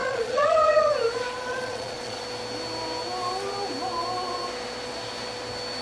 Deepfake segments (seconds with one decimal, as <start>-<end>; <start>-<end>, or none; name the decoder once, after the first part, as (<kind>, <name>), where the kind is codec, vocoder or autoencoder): 0.0-0.9 (vocoder, Vocos); 1.5-2.2

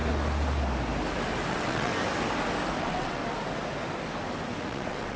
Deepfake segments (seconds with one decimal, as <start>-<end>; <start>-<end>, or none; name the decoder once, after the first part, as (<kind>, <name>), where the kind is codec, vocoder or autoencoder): 1.5-1.9 (vocoder, WaveNeXt); 2.8-3.2; 4.6-5.2

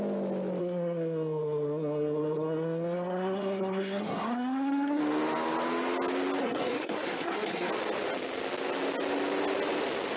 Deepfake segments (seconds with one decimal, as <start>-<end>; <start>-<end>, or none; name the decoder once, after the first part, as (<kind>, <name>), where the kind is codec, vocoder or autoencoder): 0.6-5.0 (codec, SNAC); 6.4-7.7

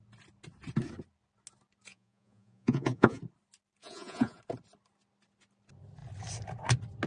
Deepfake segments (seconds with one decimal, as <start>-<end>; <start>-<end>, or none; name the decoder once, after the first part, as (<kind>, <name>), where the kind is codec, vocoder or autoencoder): 1.9-3.2 (vocoder, Vocos); 3.8-4.4

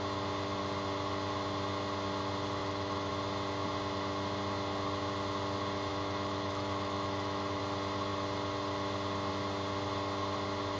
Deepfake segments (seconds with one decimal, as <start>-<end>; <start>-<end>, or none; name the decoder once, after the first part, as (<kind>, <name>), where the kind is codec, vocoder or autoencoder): 2.6-3.1 (autoencoder, DAC-VAE); 5.9-7.6